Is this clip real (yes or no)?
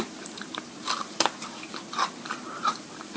no